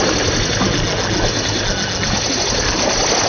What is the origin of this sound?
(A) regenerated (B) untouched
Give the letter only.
B